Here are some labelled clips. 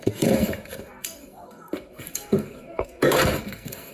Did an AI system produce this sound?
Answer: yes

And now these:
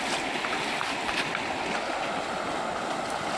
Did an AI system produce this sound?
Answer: no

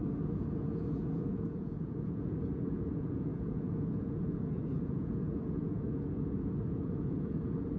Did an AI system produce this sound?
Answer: yes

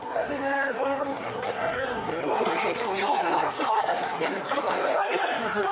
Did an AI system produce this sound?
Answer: yes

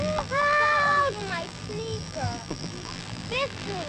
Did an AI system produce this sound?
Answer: yes